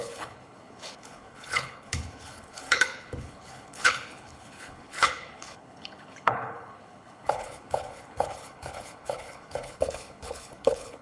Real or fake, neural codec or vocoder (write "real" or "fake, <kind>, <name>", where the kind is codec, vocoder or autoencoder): fake, codec, HILCodec